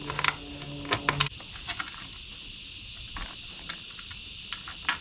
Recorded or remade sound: recorded